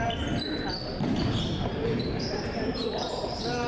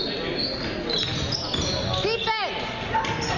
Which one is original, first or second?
second